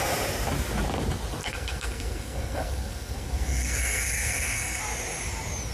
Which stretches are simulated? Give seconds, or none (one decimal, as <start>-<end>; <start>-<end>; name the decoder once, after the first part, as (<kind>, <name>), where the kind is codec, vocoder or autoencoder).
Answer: 1.4-4.8 (codec, SNAC)